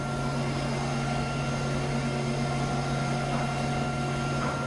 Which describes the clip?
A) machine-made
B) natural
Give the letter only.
B